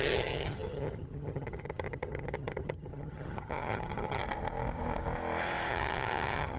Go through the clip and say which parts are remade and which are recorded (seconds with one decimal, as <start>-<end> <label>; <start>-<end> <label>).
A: 0.0-4.2 remade; 4.2-5.7 recorded; 5.7-6.6 remade